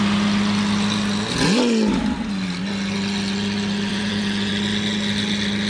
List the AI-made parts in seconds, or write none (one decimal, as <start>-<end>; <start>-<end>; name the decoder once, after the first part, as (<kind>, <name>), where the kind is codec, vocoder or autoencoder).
3.9-4.5 (vocoder, Vocos)